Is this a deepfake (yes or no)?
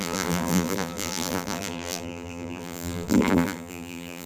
yes